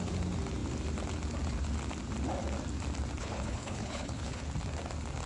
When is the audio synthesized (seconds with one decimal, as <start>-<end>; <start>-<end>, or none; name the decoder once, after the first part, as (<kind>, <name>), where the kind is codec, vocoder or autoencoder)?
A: 3.2-4.4 (codec, HILCodec)